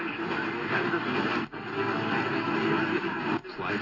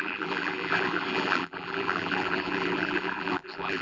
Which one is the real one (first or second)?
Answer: first